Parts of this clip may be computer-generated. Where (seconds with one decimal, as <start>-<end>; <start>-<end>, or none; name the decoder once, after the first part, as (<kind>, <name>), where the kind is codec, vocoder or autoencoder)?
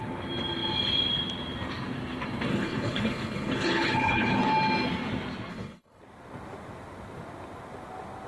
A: 2.5-4.4 (codec, HILCodec); 5.5-6.0